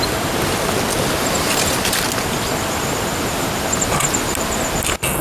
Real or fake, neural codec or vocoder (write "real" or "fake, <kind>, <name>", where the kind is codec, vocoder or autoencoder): real